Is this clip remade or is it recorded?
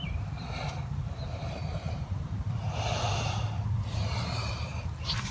remade